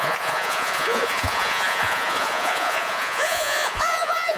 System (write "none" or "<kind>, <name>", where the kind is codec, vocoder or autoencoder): vocoder, Vocos